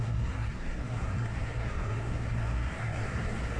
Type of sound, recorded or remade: remade